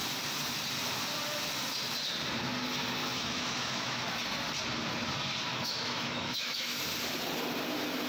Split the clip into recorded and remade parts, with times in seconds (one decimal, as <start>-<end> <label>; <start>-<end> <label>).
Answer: 0.0-3.0 recorded; 3.0-4.2 remade; 4.2-5.5 recorded; 5.5-6.8 remade; 6.8-8.1 recorded